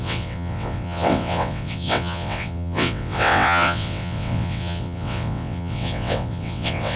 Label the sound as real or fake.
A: fake